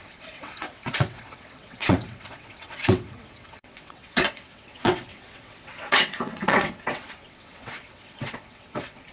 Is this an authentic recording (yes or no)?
no